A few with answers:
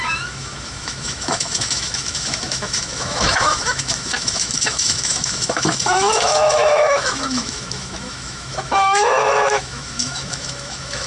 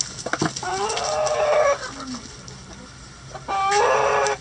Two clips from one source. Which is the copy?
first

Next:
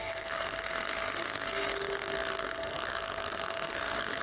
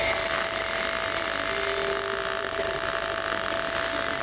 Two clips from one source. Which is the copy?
first